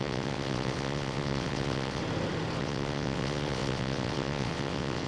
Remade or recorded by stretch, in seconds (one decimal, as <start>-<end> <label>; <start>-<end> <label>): 0.0-2.0 remade; 2.0-2.6 recorded; 2.6-5.1 remade